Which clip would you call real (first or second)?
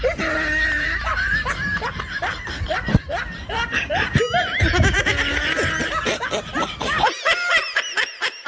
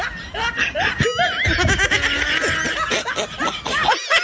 second